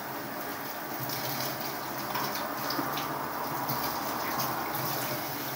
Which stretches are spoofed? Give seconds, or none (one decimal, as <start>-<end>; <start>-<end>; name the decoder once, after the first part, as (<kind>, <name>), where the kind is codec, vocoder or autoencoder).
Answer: none